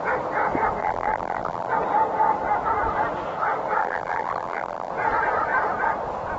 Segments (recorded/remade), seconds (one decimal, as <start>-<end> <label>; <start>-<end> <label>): 0.0-0.8 recorded; 0.8-1.7 remade; 1.7-3.8 recorded; 3.8-4.9 remade; 4.9-6.4 recorded